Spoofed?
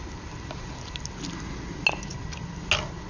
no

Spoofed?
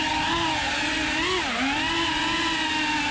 no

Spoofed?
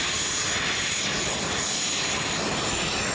no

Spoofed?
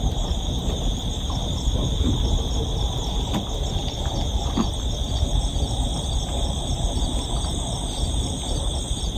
no